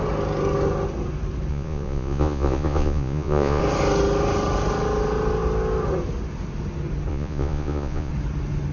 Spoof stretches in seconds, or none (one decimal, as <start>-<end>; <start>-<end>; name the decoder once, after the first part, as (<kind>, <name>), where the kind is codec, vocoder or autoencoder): 1.5-3.6 (vocoder, Vocos); 7.1-8.1